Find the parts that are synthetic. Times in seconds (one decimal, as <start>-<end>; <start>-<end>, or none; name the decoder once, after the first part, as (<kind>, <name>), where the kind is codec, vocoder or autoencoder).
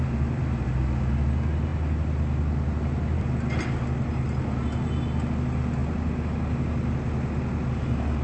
none